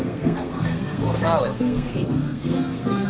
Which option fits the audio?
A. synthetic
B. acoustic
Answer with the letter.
A